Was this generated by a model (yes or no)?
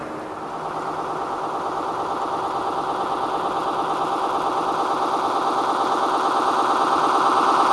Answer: no